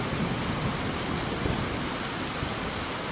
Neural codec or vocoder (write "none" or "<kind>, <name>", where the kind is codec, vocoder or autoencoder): none